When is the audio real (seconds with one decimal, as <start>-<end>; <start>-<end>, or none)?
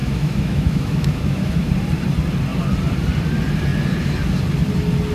1.7-5.1